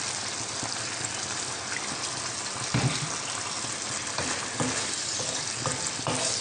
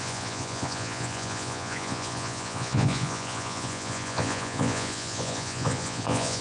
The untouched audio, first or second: first